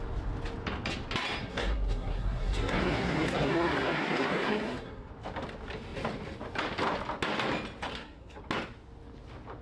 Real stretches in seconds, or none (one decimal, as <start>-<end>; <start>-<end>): 0.0-1.4; 5.1-7.9; 8.4-9.6